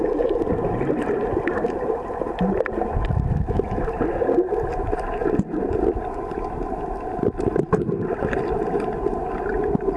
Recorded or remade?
recorded